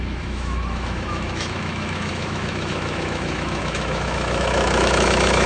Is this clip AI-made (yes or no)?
yes